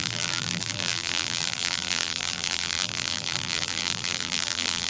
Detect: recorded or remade remade